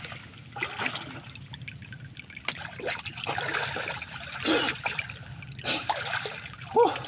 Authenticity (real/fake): real